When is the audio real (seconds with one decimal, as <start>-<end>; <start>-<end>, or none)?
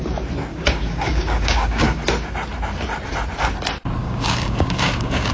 0.0-0.5; 2.0-4.0